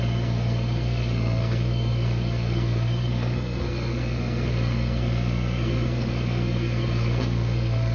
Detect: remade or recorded remade